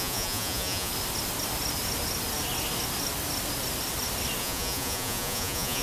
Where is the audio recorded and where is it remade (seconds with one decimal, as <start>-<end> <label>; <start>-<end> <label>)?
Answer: 0.0-0.9 remade; 0.9-4.4 recorded; 4.4-5.8 remade